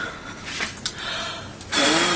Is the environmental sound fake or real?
real